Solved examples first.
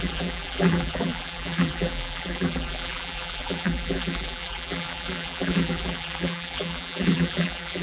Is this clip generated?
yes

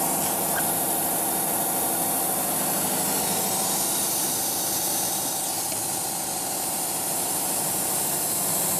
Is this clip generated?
no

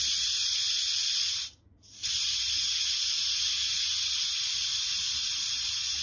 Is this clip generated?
no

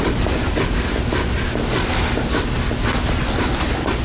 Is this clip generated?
no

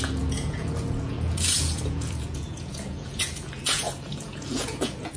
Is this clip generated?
yes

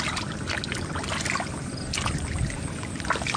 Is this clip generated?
no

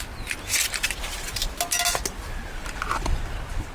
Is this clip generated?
no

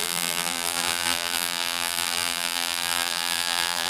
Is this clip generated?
yes